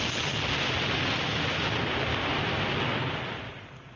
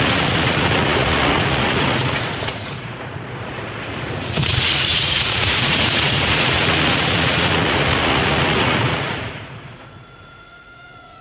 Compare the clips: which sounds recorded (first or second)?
first